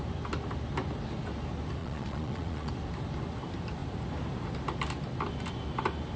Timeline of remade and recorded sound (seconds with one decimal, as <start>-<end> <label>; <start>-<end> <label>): 0.0-1.8 recorded; 1.8-2.7 remade; 2.7-6.2 recorded